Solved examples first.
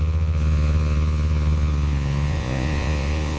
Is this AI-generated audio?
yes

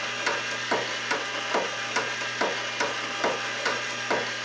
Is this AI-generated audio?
no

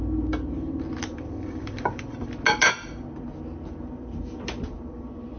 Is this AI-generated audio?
no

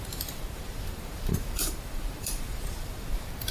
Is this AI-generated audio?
yes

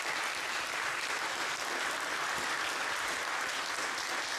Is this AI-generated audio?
no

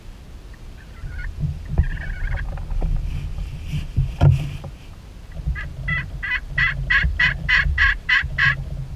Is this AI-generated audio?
no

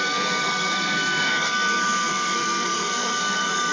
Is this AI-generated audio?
yes